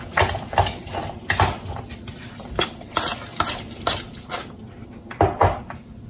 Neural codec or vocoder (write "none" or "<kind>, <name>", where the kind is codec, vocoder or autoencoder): none